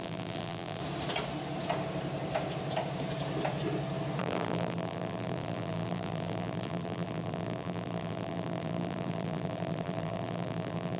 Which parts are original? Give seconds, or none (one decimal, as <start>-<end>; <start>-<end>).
0.8-4.2